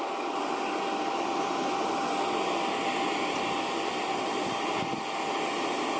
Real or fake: real